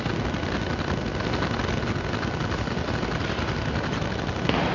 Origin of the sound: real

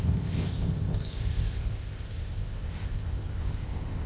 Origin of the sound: fake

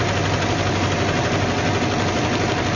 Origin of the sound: real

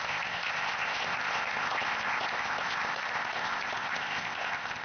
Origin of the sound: fake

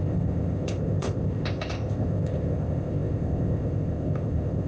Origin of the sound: fake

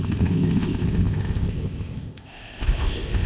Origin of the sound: fake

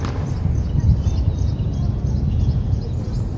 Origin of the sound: real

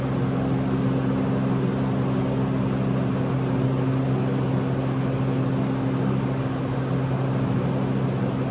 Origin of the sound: real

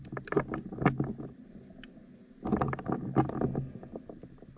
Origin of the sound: real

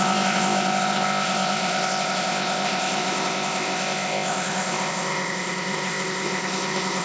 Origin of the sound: fake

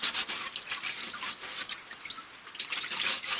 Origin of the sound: real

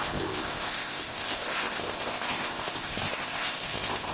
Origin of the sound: fake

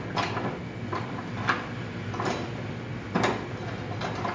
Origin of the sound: real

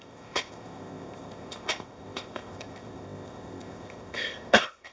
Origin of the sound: fake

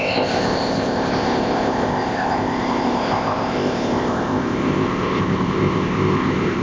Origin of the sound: fake